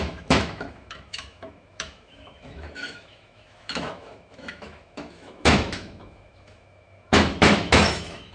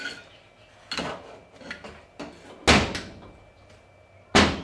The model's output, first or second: first